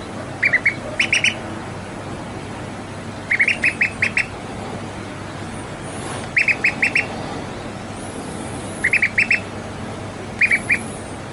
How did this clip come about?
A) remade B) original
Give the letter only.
B